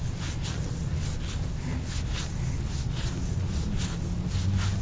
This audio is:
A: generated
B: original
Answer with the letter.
B